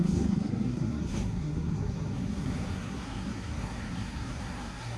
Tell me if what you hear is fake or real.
fake